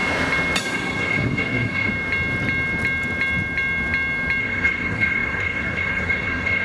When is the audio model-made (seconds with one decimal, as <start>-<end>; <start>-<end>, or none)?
0.6-1.9; 4.4-6.6